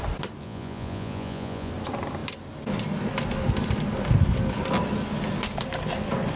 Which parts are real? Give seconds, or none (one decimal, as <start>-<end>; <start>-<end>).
0.0-0.4; 1.7-6.4